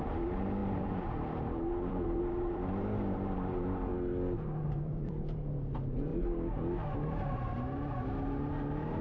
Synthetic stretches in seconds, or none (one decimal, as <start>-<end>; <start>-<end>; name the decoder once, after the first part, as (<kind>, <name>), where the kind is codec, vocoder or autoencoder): 0.0-3.9 (vocoder, BigVGAN v2); 4.6-6.1